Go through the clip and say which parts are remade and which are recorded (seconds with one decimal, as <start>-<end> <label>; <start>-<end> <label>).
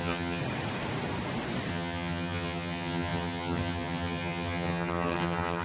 0.0-0.4 remade; 0.4-1.7 recorded; 1.7-5.6 remade